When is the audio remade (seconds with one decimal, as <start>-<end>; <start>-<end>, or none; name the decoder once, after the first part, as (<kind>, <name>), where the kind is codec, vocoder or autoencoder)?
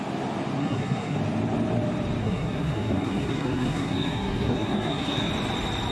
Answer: 0.6-1.2 (codec, SNAC); 2.2-5.3